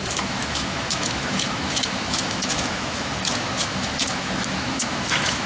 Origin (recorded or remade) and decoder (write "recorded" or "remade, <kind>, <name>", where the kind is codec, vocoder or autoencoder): remade, autoencoder, DAC-VAE